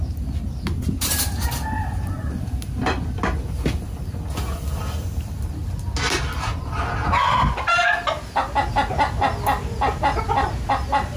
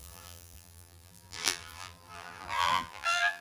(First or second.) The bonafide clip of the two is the first